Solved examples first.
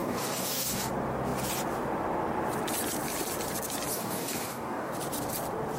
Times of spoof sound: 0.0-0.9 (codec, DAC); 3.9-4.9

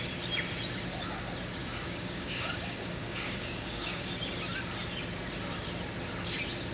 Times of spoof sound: 1.6-4.1 (codec, DAC)

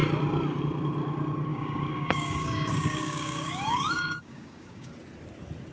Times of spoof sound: 1.5-4.9 (codec, DAC)

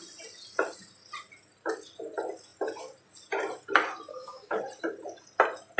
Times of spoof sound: 4.1-4.6 (codec, DAC)

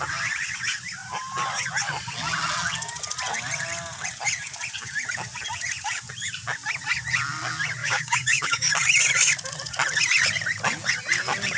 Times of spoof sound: 7.8-8.7 (codec, DAC)

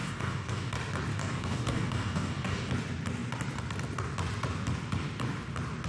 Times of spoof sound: 0.0-0.7 (codec, DAC); 1.1-2.7

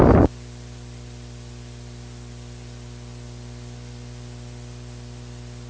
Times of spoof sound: none